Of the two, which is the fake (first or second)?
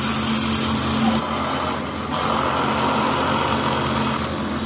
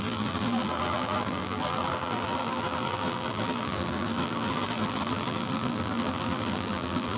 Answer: second